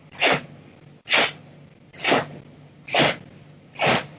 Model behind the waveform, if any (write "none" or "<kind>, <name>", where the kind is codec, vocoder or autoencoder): none